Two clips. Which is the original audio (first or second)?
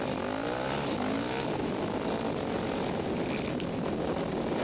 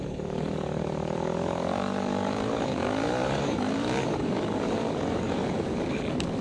first